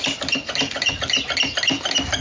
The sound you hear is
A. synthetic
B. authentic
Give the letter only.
B